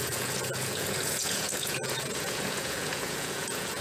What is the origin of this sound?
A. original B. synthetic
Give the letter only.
B